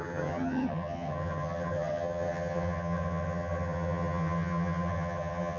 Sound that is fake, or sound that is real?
fake